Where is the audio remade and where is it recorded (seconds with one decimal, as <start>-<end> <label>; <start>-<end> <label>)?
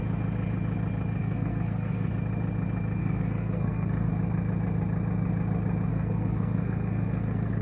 0.0-1.2 recorded; 1.2-2.1 remade; 2.1-3.0 recorded; 3.0-4.1 remade; 4.1-5.9 recorded; 5.9-7.6 remade